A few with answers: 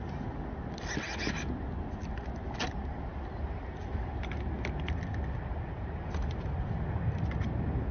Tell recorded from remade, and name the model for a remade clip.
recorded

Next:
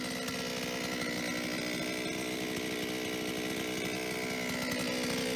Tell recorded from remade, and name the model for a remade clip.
recorded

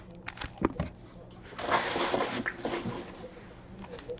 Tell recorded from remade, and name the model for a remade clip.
recorded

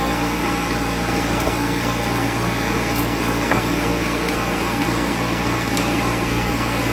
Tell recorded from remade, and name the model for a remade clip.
remade, codec, SNAC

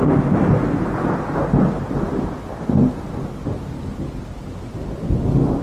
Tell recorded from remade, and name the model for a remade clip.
recorded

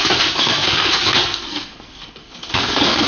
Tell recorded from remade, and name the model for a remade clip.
remade, codec, SNAC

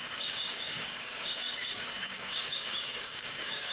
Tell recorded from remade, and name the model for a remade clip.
remade, codec, DAC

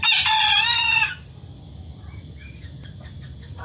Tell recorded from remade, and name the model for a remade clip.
recorded